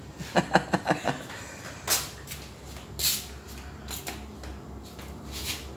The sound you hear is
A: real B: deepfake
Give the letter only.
A